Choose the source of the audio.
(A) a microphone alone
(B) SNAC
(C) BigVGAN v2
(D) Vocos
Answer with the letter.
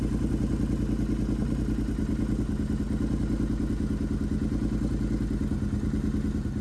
A